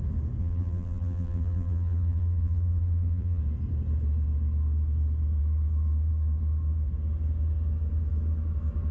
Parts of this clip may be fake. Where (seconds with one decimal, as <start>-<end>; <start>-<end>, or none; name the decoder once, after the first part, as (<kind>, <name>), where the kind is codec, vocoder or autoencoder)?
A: 0.4-3.4 (vocoder, BigVGAN v2)